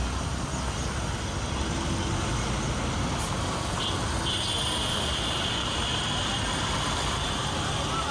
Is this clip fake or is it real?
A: real